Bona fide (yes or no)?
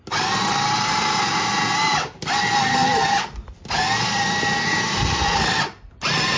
yes